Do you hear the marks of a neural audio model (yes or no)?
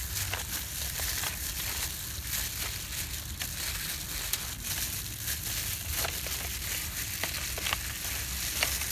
no